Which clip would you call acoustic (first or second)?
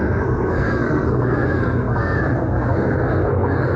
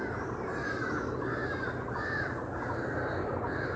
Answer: second